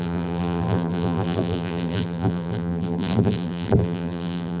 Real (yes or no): no